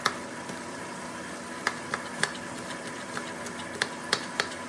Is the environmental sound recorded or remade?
recorded